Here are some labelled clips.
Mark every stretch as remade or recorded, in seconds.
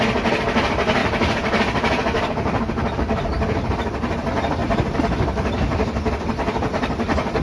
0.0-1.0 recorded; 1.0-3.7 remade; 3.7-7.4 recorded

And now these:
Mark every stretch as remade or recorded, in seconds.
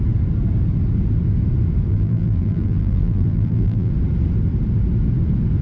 0.0-1.9 recorded; 1.9-3.9 remade; 3.9-5.6 recorded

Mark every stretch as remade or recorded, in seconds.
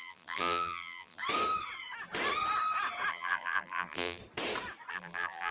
0.0-1.2 remade; 1.2-3.1 recorded; 3.1-4.2 remade; 4.2-4.9 recorded; 4.9-5.5 remade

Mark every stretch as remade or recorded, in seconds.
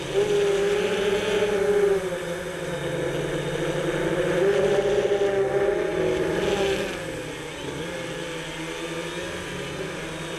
0.0-10.4 recorded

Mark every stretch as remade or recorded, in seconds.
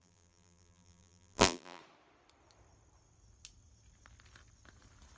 0.0-1.8 remade; 1.8-5.2 recorded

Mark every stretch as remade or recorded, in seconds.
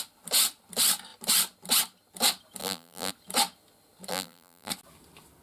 0.0-2.6 recorded; 2.6-3.1 remade; 3.1-4.1 recorded; 4.1-4.7 remade; 4.7-5.4 recorded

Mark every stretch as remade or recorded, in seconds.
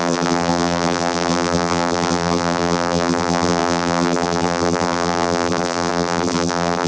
0.0-6.9 remade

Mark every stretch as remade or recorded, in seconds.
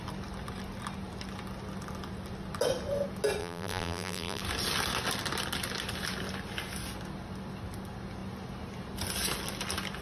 0.0-3.4 recorded; 3.4-4.4 remade; 4.4-10.0 recorded